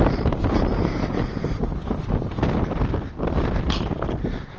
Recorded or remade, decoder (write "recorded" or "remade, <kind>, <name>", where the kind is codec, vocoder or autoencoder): recorded